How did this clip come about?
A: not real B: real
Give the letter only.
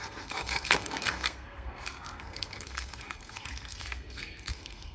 A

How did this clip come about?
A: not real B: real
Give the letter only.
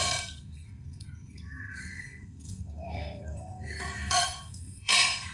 A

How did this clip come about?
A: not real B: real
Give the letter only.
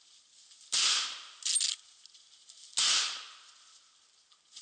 B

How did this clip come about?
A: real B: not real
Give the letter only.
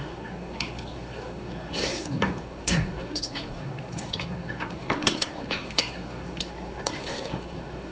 B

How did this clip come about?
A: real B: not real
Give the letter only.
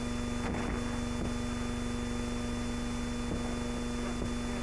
A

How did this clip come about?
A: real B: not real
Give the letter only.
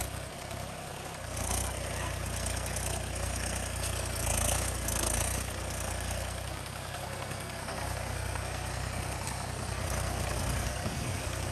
B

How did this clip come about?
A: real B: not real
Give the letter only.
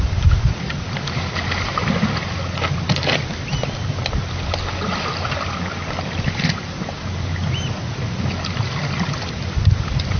A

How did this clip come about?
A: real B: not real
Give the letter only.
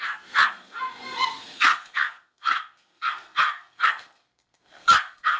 B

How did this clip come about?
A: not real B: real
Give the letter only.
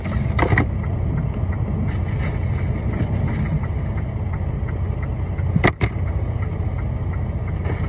B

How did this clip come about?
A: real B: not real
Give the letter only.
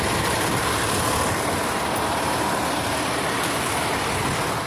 A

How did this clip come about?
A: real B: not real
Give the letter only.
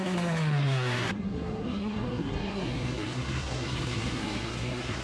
B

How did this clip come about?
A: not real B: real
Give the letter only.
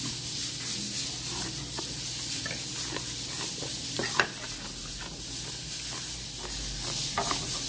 B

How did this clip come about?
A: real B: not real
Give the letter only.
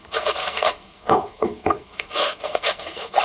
B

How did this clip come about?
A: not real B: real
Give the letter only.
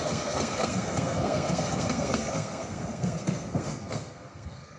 A